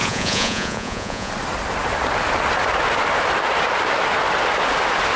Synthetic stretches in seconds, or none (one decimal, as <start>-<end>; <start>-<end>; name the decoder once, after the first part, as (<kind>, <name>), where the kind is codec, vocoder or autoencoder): 0.0-1.3 (vocoder, Vocos)